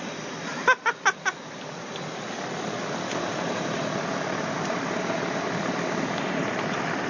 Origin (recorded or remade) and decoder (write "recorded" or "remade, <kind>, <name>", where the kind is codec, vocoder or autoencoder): recorded